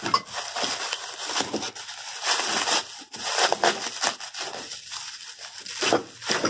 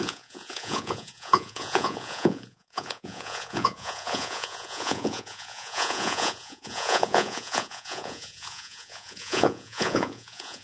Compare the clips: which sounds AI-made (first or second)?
second